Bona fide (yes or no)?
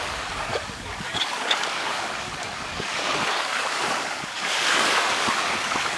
no